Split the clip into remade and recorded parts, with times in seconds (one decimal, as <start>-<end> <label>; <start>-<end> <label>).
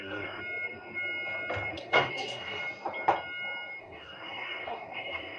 0.0-0.4 remade; 0.4-1.7 recorded; 1.7-2.6 remade; 2.6-3.8 recorded; 3.8-5.4 remade